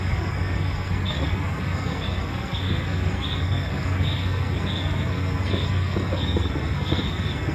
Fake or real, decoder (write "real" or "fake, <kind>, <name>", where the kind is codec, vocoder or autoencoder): fake, codec, SNAC